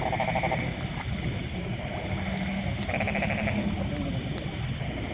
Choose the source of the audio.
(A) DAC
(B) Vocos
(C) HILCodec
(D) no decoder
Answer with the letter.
D